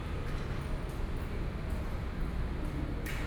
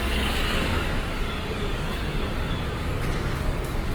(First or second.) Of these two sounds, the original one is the first